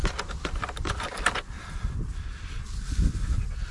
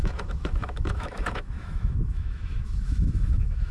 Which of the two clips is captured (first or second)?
first